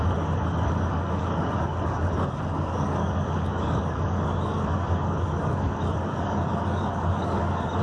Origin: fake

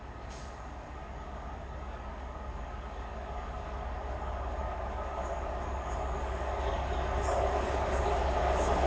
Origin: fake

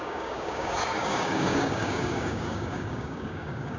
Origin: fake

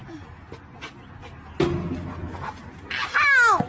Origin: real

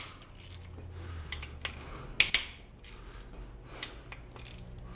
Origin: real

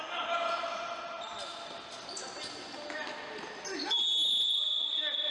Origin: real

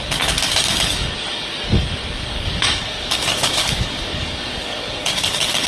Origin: fake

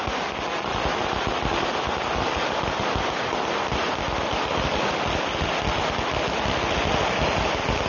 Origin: real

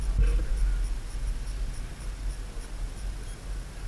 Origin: real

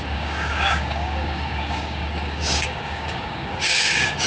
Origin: fake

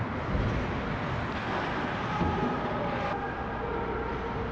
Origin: real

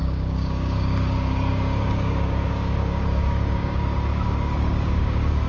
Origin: fake